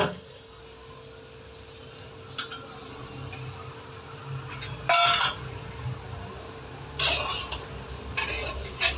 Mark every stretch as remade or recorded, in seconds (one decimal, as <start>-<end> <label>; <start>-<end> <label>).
0.0-0.6 remade; 0.6-9.0 recorded